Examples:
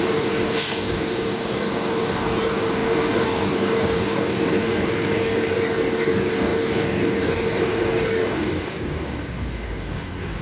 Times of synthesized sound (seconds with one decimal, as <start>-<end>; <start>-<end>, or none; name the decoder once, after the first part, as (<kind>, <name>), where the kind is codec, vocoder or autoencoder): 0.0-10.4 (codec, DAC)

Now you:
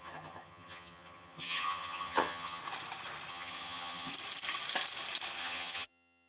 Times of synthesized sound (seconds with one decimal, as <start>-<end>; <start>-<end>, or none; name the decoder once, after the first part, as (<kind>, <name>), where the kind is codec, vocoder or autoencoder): 0.0-2.6 (vocoder, HiFi-GAN); 3.3-4.1; 5.4-6.3

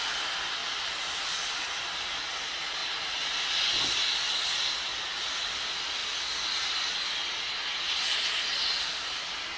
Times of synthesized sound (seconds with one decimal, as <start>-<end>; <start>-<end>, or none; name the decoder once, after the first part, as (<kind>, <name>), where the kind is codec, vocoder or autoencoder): 0.6-2.3 (vocoder, BigVGAN v2); 2.8-3.5

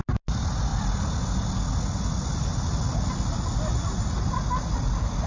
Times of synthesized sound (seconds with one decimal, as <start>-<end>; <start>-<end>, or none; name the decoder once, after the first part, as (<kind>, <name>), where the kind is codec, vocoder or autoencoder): none